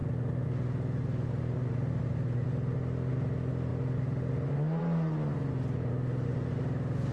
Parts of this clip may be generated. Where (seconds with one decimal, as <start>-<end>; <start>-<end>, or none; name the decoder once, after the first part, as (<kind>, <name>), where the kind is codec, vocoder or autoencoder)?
none